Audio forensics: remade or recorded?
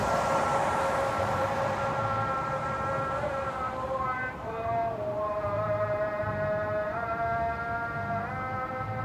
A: remade